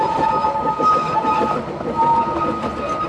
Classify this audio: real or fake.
real